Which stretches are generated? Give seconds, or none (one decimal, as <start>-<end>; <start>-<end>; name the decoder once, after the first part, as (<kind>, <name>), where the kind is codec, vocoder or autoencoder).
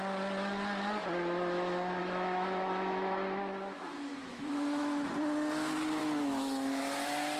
2.0-5.1 (autoencoder, DAC-VAE); 6.0-6.8